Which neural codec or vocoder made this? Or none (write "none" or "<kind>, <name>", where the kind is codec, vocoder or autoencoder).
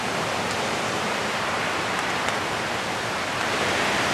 vocoder, BigVGAN v2